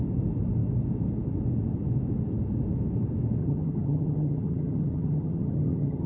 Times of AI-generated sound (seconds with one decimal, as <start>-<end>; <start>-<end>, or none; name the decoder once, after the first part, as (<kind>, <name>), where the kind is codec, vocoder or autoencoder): 3.4-6.1 (vocoder, HiFi-GAN)